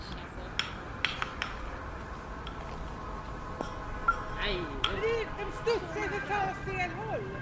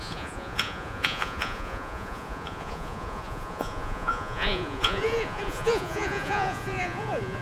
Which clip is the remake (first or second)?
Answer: second